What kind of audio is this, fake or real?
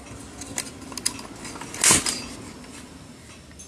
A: real